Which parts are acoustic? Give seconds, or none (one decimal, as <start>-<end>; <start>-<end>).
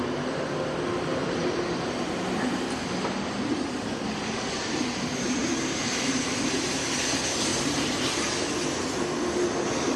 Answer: 0.0-1.1; 1.6-5.4; 7.1-7.5; 8.1-10.0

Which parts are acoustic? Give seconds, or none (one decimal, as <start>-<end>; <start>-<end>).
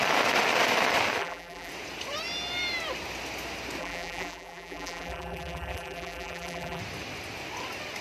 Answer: 0.0-1.2; 1.7-3.8; 6.8-8.0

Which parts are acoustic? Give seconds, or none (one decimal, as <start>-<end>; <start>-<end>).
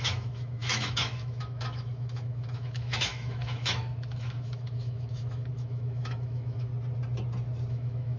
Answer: 6.7-7.7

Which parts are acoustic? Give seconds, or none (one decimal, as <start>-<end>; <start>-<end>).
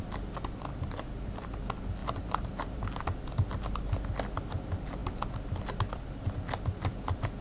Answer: 0.0-0.7; 1.6-2.0; 2.8-7.4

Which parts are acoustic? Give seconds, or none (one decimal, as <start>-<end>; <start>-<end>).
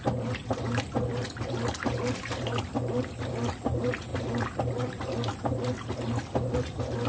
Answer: 0.0-7.1